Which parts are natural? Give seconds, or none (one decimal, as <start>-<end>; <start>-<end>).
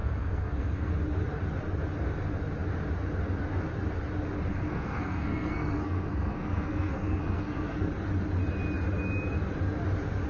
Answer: 0.9-4.5; 7.9-10.3